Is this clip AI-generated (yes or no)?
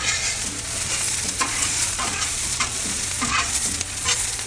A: yes